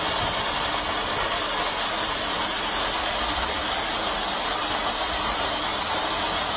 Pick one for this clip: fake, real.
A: real